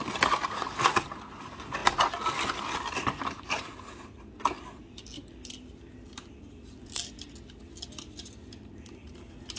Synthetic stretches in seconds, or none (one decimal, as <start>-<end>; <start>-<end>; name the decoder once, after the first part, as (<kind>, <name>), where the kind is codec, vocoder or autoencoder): none